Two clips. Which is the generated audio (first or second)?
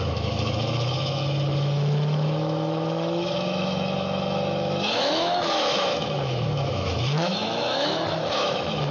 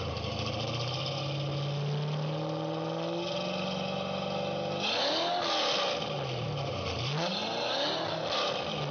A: first